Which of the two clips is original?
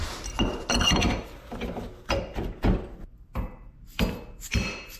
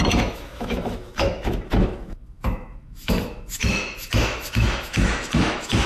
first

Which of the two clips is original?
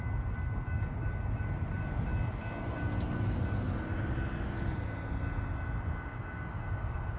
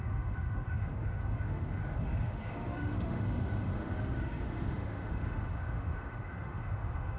first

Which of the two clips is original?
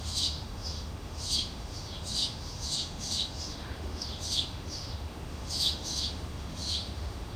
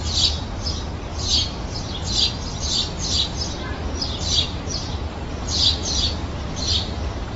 second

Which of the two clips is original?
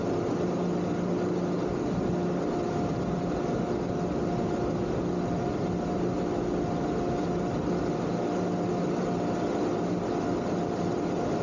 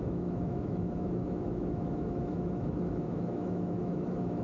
first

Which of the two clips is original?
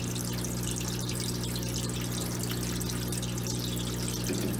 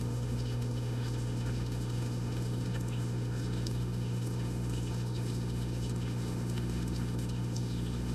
first